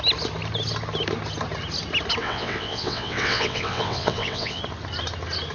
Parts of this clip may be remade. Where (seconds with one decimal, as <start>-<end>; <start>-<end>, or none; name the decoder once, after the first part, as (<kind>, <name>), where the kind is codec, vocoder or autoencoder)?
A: 2.2-4.6 (vocoder, WaveNeXt)